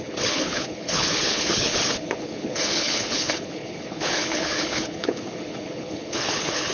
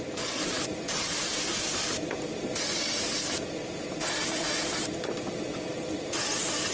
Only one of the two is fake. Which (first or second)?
first